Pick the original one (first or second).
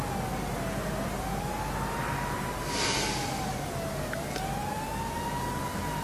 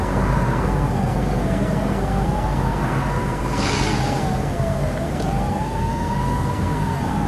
first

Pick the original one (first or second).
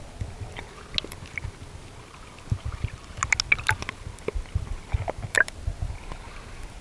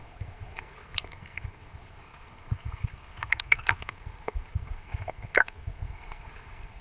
first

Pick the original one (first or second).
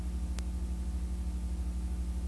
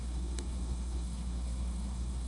first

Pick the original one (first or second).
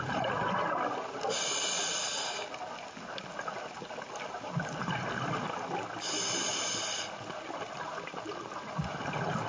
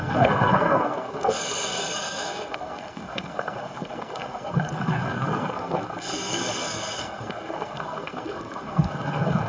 first